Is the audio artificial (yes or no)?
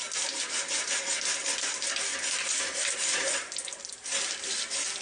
no